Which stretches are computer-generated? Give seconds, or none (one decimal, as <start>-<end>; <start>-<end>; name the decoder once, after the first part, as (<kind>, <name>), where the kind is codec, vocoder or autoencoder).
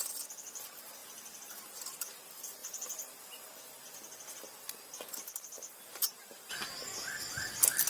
none